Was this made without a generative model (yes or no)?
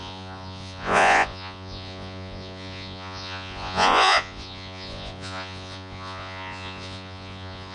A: no